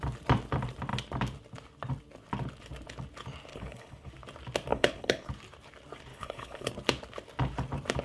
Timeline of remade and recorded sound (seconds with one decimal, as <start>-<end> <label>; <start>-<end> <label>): 0.0-3.5 recorded; 3.5-4.1 remade; 4.1-4.7 recorded; 4.7-5.3 remade; 5.3-6.1 recorded; 6.1-6.7 remade; 6.7-8.0 recorded